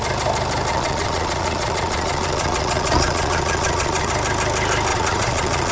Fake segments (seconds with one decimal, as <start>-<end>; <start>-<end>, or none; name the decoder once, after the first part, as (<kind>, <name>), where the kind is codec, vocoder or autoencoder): 0.7-4.1 (vocoder, Vocos); 4.9-5.7